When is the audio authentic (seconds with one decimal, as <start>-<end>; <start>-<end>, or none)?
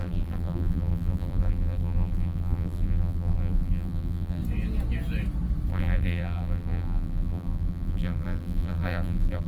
4.4-5.7